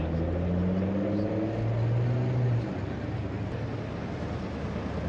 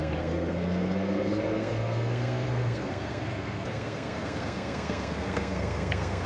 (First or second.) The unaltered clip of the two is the first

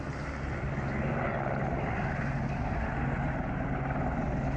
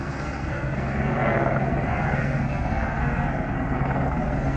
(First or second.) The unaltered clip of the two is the first